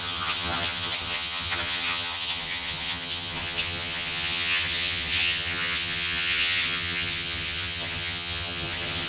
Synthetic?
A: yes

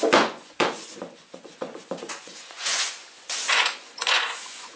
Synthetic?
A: yes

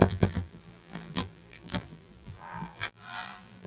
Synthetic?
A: yes